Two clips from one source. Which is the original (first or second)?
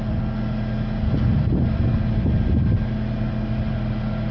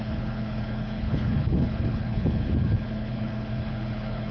first